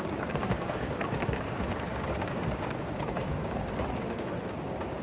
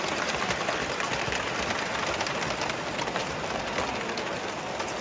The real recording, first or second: second